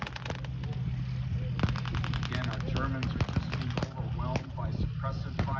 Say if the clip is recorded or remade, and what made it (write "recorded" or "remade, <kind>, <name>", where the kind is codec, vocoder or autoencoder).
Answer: recorded